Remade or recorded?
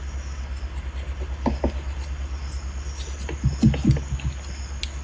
recorded